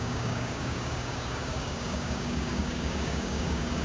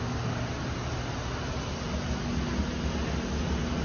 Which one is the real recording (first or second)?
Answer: second